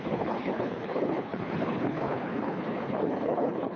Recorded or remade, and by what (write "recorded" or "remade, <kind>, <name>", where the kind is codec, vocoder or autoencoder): remade, codec, HILCodec